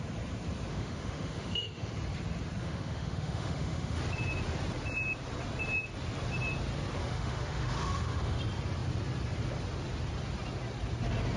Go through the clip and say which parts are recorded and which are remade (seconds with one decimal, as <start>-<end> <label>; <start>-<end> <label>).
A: 0.0-0.7 recorded; 0.7-1.9 remade; 1.9-2.6 recorded; 2.6-4.0 remade; 4.0-7.0 recorded; 7.0-8.4 remade; 8.4-11.4 recorded